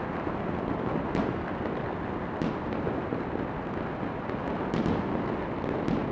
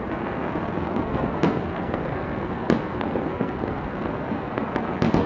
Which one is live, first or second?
first